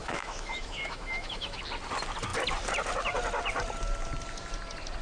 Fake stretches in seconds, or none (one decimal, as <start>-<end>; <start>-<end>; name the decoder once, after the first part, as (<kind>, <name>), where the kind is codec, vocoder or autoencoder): 0.0-1.6 (autoencoder, DAC-VAE)